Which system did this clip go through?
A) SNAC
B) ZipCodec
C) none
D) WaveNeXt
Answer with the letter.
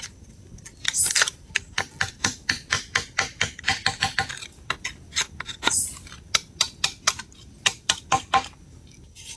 C